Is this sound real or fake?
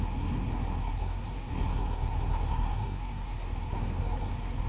fake